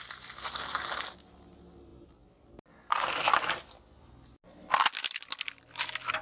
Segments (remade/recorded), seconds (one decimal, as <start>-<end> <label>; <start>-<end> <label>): 0.0-6.2 recorded